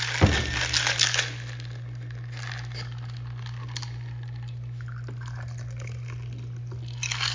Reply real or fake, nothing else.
real